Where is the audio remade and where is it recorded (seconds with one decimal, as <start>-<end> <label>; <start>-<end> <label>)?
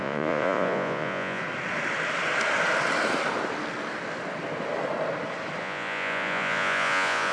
0.0-1.4 remade; 1.4-5.6 recorded; 5.6-7.3 remade